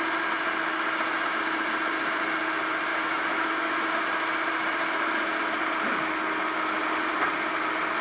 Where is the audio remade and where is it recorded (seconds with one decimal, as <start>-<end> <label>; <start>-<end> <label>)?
0.0-2.9 recorded; 2.9-3.9 remade; 3.9-8.0 recorded